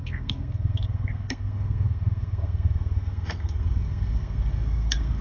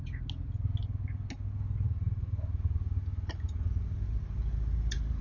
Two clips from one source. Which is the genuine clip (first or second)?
second